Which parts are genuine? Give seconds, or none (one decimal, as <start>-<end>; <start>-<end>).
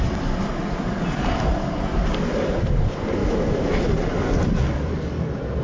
0.0-3.2; 3.8-5.6